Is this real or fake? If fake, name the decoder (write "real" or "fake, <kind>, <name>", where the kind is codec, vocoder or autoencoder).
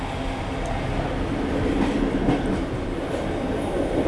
real